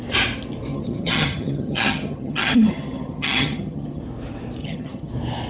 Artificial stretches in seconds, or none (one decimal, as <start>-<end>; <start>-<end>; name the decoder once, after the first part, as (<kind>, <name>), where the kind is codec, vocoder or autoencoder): 0.7-4.0 (vocoder, HiFi-GAN); 4.6-5.1